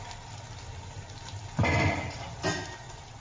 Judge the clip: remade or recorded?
recorded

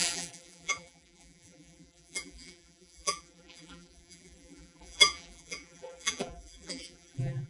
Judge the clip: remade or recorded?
remade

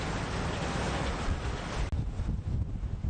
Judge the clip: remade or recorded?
recorded